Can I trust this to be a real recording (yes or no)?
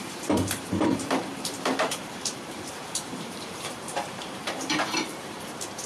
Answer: no